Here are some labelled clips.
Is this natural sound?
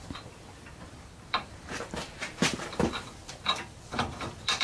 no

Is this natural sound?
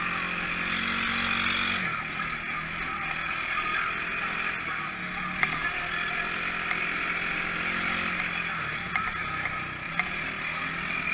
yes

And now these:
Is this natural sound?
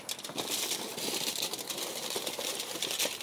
yes